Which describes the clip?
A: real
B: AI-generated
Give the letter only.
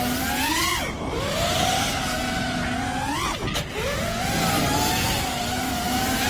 A